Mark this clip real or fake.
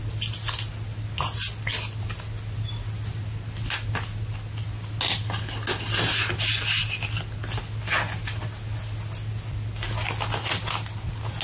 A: real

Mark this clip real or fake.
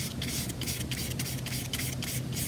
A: real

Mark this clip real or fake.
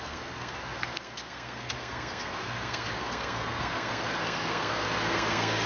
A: fake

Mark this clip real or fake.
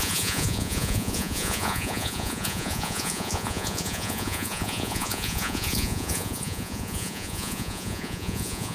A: fake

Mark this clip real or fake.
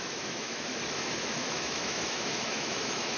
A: fake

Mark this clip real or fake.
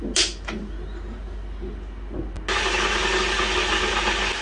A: real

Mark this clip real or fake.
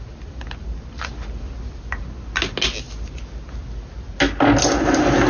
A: real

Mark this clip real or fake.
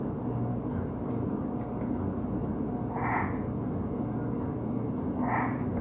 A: real